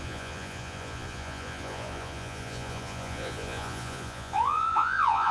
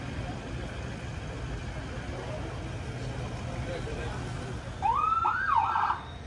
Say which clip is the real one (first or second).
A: second